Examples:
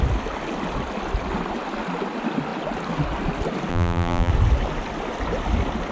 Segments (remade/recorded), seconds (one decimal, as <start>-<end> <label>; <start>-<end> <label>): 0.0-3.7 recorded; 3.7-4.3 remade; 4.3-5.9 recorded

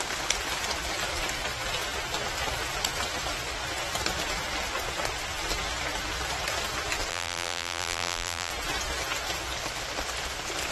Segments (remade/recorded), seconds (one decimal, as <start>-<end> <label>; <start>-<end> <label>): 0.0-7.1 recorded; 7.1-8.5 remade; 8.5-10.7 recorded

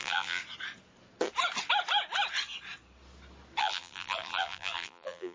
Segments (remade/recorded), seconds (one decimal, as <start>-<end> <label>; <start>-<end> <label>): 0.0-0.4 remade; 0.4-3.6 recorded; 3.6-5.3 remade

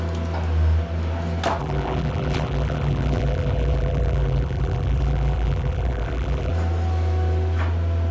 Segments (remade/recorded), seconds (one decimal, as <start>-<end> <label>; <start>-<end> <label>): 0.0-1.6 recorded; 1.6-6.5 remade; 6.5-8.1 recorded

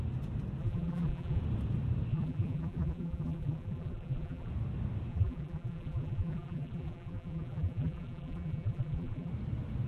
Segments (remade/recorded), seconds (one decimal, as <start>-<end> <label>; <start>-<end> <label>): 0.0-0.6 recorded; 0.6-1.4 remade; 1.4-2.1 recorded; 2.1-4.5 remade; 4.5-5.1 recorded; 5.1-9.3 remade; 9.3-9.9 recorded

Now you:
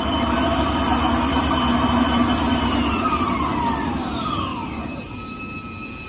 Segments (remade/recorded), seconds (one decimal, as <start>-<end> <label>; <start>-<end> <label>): 0.0-6.1 recorded

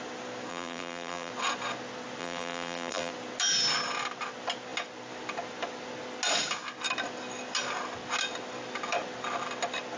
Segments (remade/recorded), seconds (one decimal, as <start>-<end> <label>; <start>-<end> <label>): 0.0-0.5 recorded; 0.5-1.3 remade; 1.3-2.2 recorded; 2.2-3.1 remade; 3.1-10.0 recorded